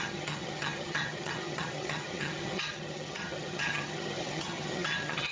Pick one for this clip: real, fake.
fake